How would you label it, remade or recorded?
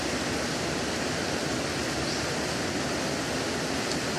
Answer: recorded